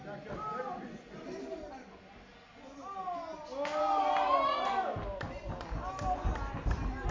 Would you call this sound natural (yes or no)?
yes